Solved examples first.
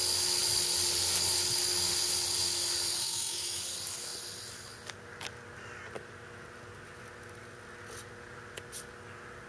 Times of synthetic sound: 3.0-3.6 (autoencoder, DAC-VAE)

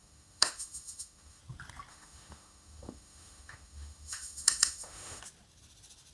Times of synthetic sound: 0.0-1.4 (autoencoder, DAC-VAE); 1.9-5.2